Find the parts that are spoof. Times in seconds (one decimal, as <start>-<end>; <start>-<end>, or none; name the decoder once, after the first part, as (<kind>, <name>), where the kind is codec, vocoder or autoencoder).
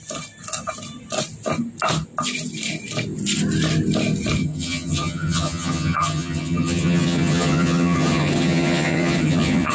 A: 4.4-9.7 (vocoder, HiFi-GAN)